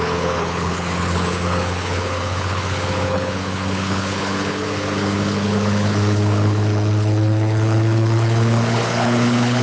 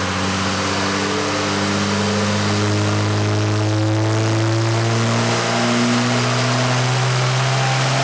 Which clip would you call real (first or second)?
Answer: second